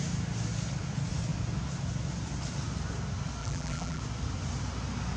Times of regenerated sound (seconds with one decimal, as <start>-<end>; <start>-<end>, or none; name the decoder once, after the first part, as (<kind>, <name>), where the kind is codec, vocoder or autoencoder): 3.4-4.0 (vocoder, BigVGAN v2)